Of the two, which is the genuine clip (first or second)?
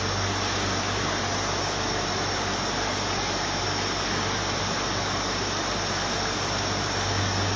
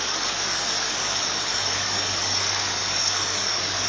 first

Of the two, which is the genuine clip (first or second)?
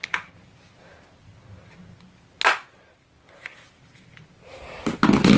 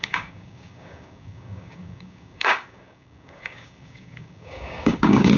first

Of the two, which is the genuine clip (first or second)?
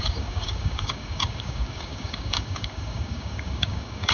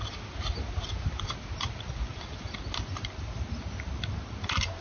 second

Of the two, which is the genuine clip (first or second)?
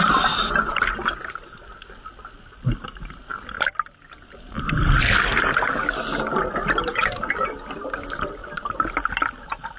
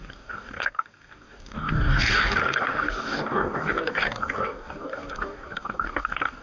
first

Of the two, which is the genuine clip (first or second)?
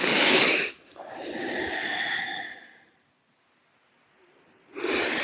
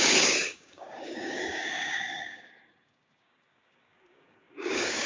first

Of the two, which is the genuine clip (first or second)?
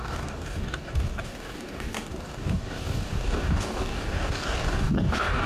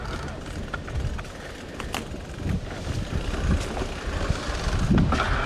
second